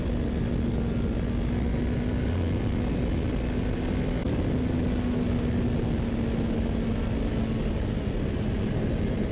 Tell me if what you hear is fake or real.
real